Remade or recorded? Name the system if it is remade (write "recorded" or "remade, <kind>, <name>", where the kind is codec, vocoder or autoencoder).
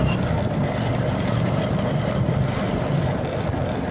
recorded